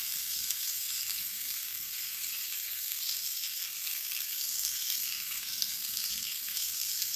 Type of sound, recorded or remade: remade